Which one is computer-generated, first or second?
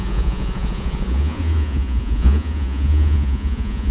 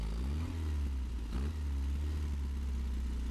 first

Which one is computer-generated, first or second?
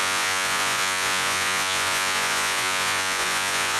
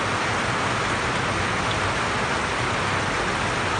first